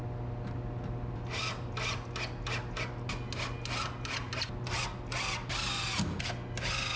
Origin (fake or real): real